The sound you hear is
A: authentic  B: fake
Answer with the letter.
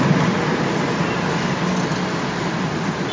A